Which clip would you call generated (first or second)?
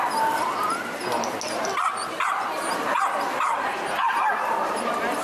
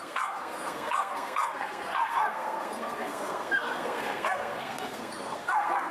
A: second